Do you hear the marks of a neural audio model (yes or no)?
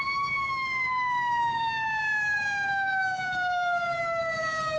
yes